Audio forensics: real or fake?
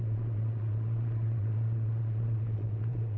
fake